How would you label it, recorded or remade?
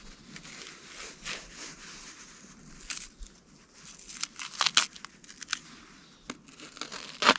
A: recorded